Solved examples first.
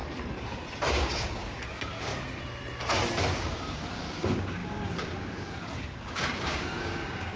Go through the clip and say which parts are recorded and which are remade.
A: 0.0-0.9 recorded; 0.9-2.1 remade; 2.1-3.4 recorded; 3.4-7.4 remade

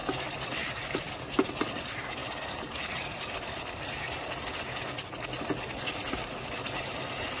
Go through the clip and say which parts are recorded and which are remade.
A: 0.0-7.4 recorded

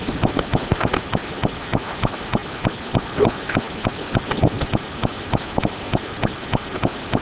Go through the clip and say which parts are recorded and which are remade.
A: 0.0-7.2 recorded

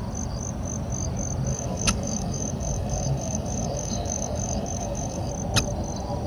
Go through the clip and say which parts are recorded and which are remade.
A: 0.0-1.5 recorded; 1.5-5.3 remade; 5.3-6.3 recorded